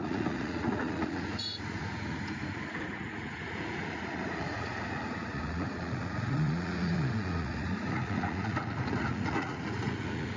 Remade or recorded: remade